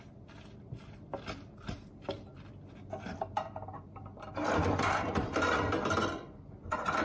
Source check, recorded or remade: remade